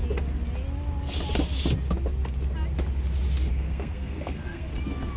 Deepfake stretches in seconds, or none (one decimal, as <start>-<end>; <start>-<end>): 3.5-4.7